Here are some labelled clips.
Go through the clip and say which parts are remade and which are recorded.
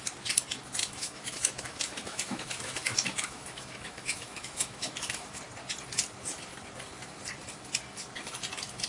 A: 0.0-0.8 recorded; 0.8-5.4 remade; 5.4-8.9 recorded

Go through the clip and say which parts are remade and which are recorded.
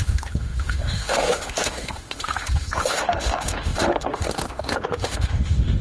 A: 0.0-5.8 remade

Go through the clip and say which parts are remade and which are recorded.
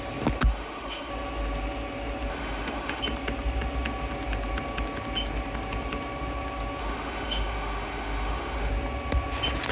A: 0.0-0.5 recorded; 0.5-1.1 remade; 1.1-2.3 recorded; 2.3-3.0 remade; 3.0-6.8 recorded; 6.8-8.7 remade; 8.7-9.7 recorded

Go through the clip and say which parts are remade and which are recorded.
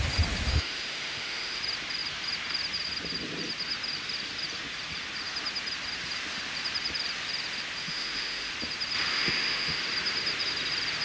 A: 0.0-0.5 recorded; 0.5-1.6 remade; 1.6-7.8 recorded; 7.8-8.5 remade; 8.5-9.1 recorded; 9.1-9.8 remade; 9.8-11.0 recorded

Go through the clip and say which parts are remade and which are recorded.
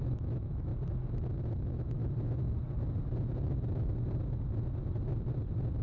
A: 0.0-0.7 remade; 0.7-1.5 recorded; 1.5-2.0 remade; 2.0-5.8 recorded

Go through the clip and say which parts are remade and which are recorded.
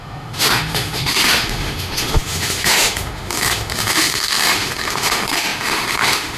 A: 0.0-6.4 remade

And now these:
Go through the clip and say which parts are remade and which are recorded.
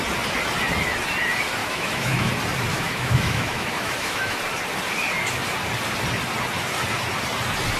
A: 0.0-1.6 recorded; 1.6-2.3 remade; 2.3-2.7 recorded; 2.7-4.4 remade; 4.4-7.8 recorded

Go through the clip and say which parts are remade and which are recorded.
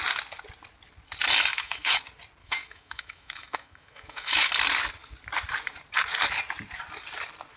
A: 0.0-1.5 recorded; 1.5-2.0 remade; 2.0-2.4 recorded; 2.4-4.5 remade; 4.5-7.6 recorded